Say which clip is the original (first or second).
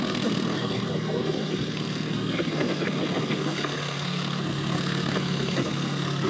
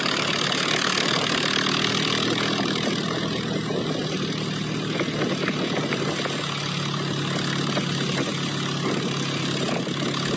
second